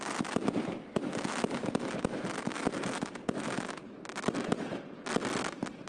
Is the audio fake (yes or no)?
no